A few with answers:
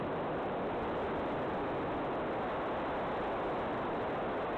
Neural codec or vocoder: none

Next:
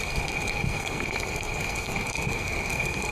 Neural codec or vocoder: codec, SNAC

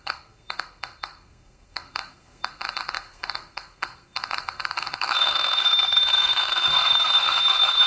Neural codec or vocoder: codec, SNAC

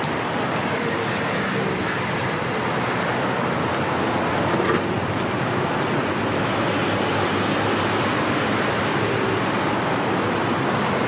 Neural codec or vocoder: none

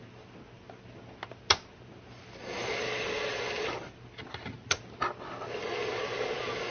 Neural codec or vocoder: none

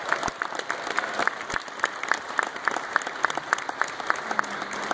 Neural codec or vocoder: none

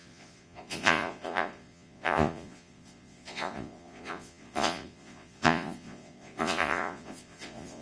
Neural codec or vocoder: vocoder, Vocos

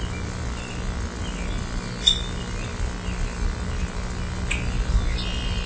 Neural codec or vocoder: none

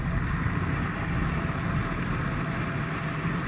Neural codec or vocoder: none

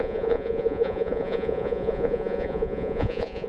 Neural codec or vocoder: vocoder, Vocos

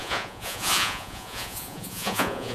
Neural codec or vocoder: vocoder, Vocos